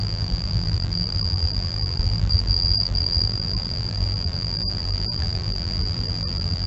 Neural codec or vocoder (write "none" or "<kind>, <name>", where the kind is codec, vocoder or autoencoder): vocoder, BigVGAN v2